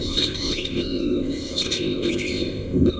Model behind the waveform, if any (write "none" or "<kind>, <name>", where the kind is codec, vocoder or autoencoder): codec, ZipCodec